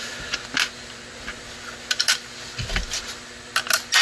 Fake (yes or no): no